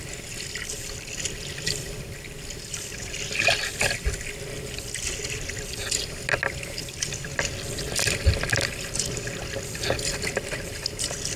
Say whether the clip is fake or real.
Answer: real